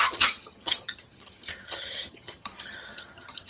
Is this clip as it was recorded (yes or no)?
no